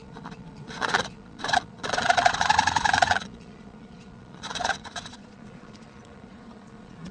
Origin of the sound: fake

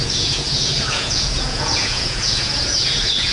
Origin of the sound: fake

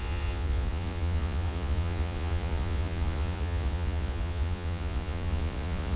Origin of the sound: fake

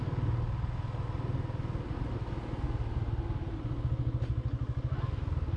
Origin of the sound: real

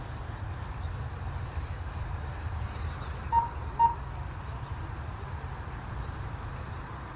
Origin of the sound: real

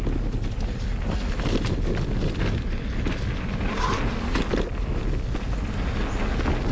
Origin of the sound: real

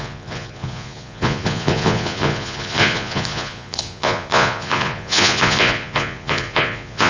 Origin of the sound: fake